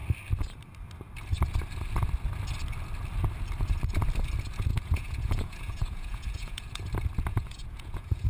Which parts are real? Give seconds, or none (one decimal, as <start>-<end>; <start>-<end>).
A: 0.0-4.7; 6.8-7.3